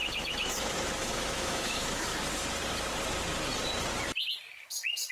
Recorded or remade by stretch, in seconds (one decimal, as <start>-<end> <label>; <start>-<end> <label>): 0.0-2.1 remade; 2.1-4.5 recorded; 4.5-5.1 remade